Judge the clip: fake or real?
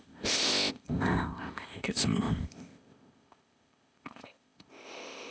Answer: fake